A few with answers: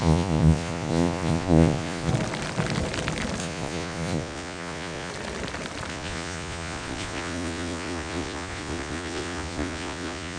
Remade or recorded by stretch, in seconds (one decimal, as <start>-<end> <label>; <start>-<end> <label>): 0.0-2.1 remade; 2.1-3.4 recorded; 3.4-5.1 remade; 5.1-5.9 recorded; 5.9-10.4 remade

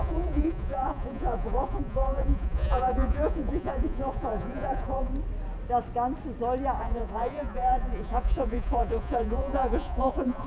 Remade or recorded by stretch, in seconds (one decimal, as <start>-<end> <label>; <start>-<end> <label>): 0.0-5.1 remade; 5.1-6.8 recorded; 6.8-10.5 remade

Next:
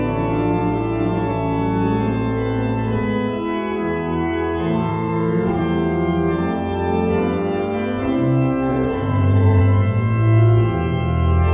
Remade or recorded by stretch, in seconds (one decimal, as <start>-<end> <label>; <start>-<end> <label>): 0.0-4.9 recorded; 4.9-5.6 remade; 5.6-8.7 recorded; 8.7-9.6 remade; 9.6-11.5 recorded

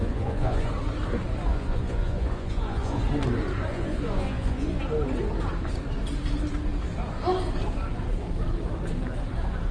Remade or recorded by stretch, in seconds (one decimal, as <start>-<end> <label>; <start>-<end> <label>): 0.0-0.7 remade; 0.7-1.5 recorded; 1.5-3.0 remade; 3.0-3.7 recorded; 3.7-4.8 remade; 4.8-9.7 recorded